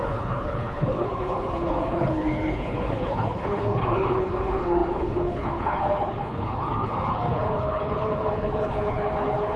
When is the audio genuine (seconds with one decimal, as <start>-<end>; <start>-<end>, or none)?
none